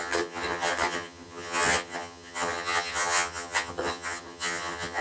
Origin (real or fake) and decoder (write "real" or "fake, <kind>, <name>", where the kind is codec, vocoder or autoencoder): fake, vocoder, HiFi-GAN